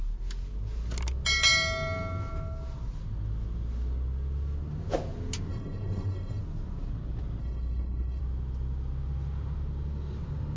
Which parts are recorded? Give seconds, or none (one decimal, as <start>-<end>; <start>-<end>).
0.0-5.5; 6.4-7.4; 8.2-10.6